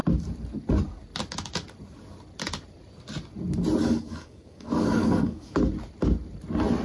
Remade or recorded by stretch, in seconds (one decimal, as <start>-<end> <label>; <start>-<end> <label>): 0.0-3.8 recorded; 3.8-5.7 remade; 5.7-6.8 recorded